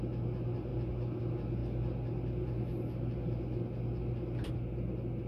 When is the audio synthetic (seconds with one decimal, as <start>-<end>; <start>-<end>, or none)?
none